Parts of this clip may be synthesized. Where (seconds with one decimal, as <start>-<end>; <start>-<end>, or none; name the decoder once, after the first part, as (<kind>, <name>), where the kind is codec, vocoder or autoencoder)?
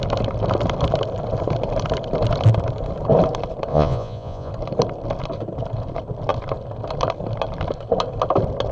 3.7-4.5 (vocoder, Vocos)